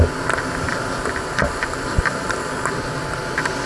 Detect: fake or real real